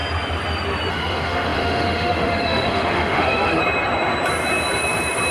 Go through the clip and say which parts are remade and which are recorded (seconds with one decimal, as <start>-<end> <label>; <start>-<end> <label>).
0.0-0.9 recorded; 0.9-3.6 remade; 3.6-5.3 recorded